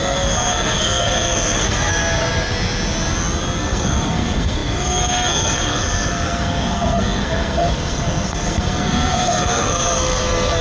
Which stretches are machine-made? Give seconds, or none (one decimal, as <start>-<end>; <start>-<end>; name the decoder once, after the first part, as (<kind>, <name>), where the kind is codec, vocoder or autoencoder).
0.0-2.0 (codec, SNAC); 3.6-10.6